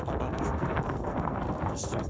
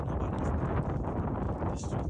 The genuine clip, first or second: second